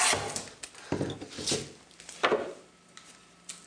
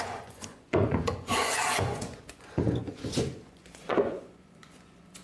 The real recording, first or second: first